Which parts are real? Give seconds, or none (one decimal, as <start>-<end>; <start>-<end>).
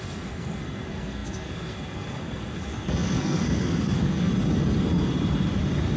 4.3-6.0